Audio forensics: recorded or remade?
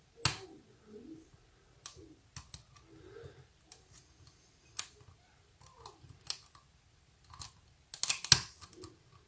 recorded